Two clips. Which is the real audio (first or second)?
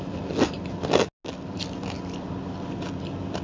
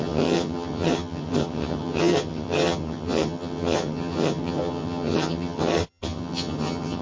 first